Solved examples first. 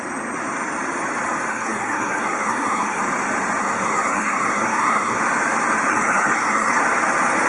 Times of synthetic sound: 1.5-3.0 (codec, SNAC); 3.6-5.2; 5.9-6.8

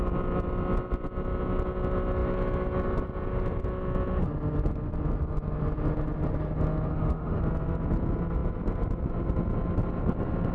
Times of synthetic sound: 6.9-7.4 (autoencoder, DAC-VAE)

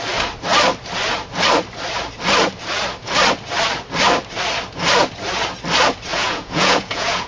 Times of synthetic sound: 6.1-7.3 (vocoder, Vocos)

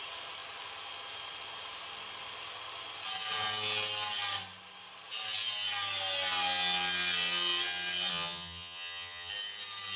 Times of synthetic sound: 8.1-9.3 (vocoder, HiFi-GAN)

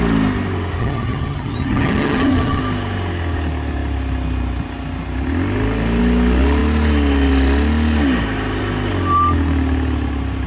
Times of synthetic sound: 0.8-2.6 (vocoder, HiFi-GAN)

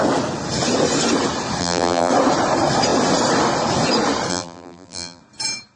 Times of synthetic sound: 1.6-2.1 (vocoder, BigVGAN v2); 4.3-5.2

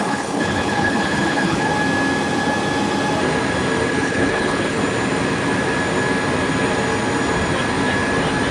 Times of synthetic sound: 0.0-1.7 (codec, HILCodec); 3.9-4.8

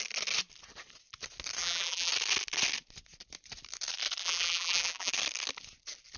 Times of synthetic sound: 1.6-2.1 (vocoder, BigVGAN v2); 4.2-5.1